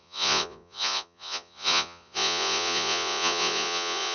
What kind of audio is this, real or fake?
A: fake